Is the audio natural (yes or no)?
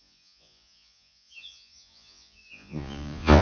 no